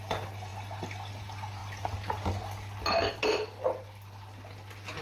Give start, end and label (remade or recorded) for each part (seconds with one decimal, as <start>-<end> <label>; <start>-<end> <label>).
0.0-5.0 recorded